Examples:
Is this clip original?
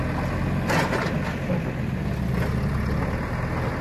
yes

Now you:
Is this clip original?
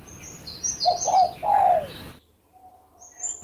yes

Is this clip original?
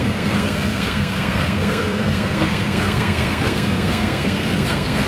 no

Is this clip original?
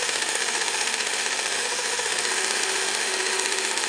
no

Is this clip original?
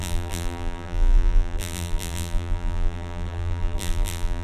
no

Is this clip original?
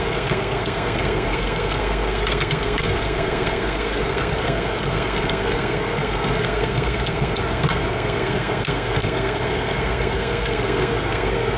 no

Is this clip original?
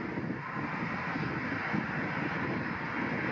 yes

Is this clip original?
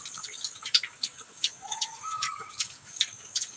no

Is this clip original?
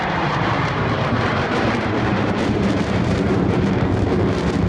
no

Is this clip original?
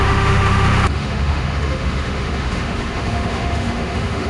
no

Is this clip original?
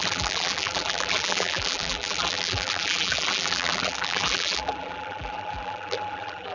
no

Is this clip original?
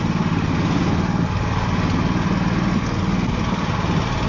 yes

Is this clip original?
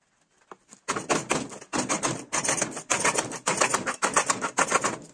yes